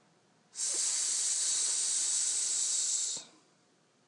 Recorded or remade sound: recorded